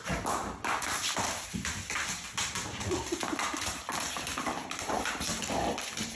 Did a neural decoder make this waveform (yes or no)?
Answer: no